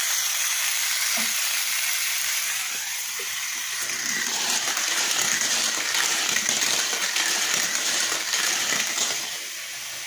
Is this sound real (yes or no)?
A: no